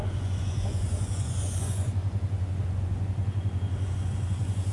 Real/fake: fake